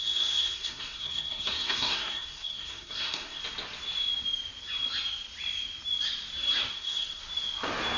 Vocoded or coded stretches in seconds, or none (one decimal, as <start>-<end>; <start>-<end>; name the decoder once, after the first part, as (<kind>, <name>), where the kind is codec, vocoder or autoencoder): 0.0-3.4 (codec, SNAC); 6.7-7.2